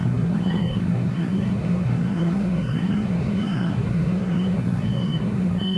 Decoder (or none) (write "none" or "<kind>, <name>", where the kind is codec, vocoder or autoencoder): codec, SNAC